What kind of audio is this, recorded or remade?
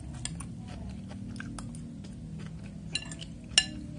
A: recorded